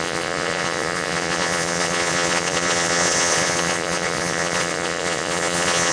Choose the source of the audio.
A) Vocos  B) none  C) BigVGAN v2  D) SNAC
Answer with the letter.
A